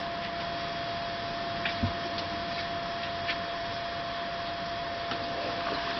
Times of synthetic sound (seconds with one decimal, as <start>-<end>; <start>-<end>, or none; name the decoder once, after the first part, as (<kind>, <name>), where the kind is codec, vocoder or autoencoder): 4.8-6.0 (vocoder, BigVGAN v2)